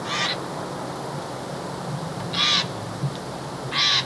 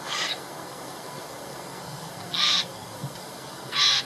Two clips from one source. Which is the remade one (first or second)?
second